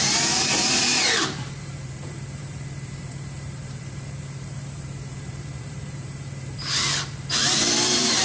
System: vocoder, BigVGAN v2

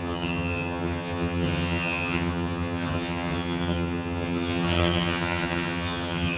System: vocoder, HiFi-GAN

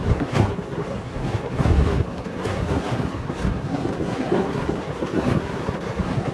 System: codec, SNAC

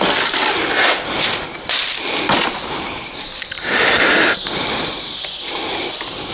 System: none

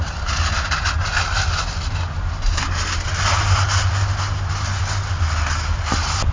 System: none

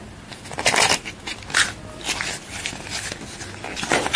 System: none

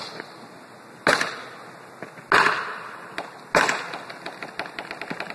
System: none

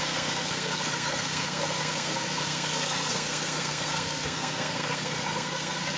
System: codec, SNAC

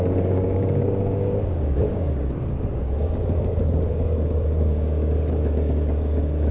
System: codec, DAC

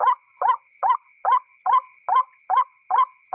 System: none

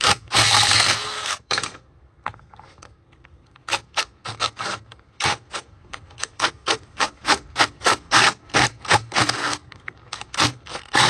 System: codec, SNAC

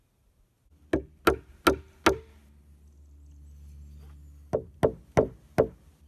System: none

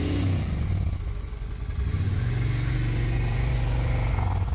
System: vocoder, Vocos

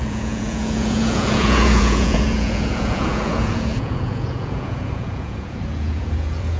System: vocoder, Vocos